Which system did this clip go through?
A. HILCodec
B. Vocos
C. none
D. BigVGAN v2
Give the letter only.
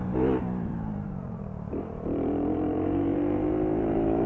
D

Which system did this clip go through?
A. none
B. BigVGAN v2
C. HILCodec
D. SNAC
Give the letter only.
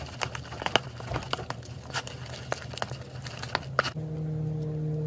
A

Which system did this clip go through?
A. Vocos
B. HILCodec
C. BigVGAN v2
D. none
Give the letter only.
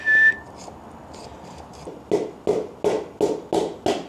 D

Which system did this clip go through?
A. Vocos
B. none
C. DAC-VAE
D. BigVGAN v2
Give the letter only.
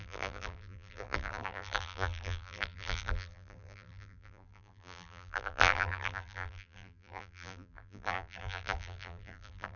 D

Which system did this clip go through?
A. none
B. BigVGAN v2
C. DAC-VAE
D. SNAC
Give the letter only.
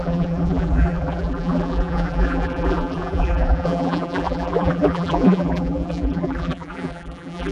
B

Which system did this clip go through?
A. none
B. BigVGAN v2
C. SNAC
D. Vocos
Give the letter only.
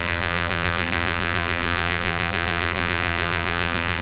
B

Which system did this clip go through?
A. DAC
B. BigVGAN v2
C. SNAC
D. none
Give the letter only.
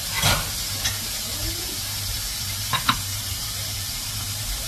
B